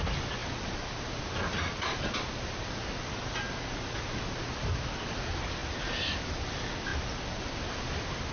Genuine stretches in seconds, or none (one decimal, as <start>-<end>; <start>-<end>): 0.0-8.3